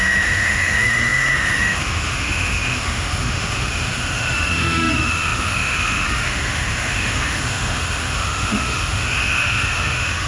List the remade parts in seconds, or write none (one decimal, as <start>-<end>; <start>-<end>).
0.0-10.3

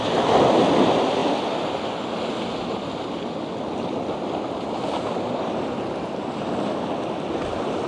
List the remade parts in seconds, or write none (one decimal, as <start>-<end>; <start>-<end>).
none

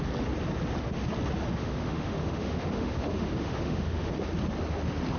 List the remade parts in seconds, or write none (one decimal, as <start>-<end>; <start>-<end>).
1.6-4.1